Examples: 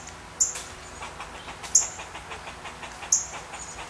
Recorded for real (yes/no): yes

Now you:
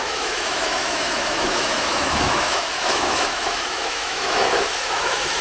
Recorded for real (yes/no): no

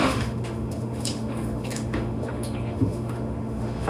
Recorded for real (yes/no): no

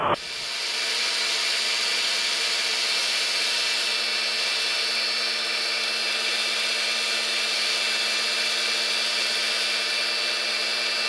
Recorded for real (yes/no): yes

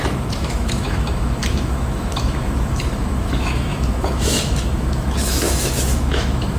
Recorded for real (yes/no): no